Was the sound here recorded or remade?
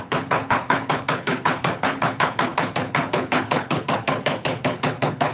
remade